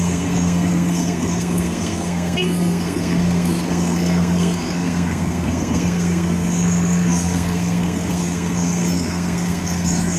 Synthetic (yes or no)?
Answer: yes